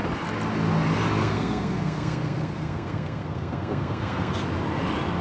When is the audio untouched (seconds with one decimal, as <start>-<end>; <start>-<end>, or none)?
0.0-1.2; 4.3-5.2